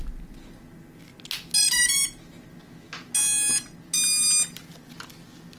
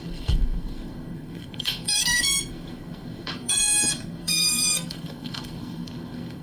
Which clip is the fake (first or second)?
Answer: second